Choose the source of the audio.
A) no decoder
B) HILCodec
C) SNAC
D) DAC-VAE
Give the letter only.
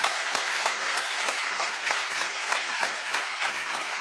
C